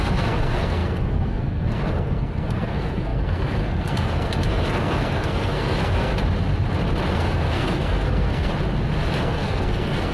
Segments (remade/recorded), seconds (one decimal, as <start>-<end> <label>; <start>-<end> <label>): 0.0-6.1 remade; 6.1-7.1 recorded; 7.1-8.5 remade; 8.5-9.2 recorded; 9.2-10.1 remade